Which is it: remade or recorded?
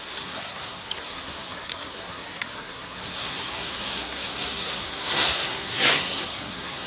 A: remade